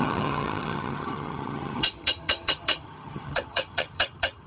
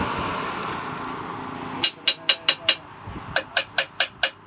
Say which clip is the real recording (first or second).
second